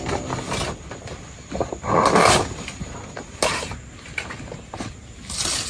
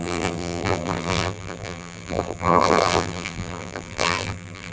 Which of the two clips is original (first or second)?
first